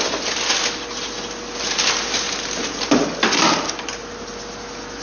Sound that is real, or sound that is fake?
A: real